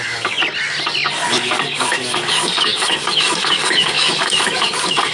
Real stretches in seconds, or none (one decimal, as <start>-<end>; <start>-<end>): 0.4-1.3